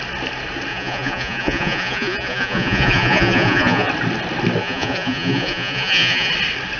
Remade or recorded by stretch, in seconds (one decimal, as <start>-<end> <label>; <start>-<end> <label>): 0.0-0.7 recorded; 0.7-3.9 remade; 3.9-4.6 recorded; 4.6-6.3 remade; 6.3-6.8 recorded